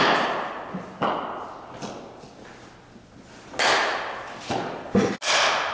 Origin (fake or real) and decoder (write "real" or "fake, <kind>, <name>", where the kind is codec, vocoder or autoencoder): real